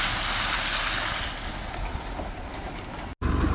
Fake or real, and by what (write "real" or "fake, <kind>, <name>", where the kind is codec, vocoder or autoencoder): real